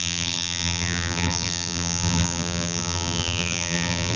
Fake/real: fake